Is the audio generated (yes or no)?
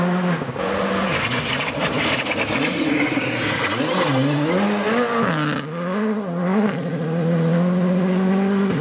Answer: no